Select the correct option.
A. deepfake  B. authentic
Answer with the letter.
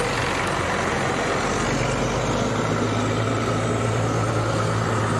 B